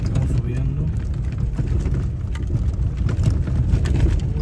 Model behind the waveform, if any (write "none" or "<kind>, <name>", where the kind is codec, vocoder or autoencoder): none